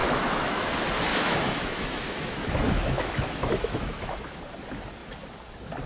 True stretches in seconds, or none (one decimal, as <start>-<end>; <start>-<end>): 0.7-1.1; 4.4-5.9